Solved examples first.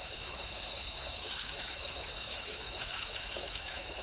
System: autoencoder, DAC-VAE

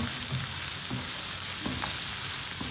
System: none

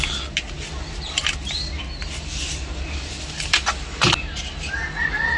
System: none